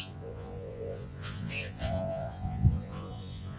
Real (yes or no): no